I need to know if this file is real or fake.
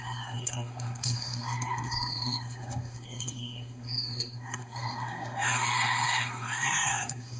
fake